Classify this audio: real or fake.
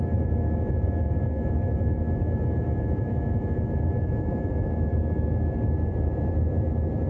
fake